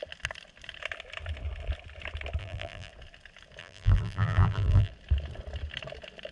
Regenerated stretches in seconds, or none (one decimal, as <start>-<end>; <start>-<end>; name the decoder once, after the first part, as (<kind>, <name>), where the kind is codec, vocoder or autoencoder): 2.4-2.9 (vocoder, BigVGAN v2); 3.6-4.9